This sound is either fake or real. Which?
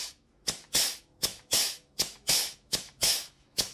fake